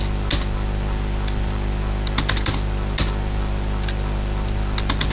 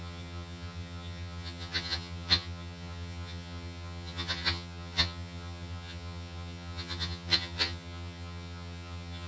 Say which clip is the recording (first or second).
first